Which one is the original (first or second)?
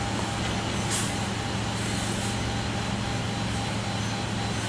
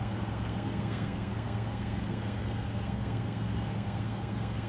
first